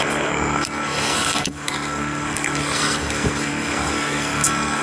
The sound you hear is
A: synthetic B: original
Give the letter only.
A